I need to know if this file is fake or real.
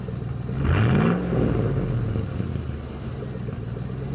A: real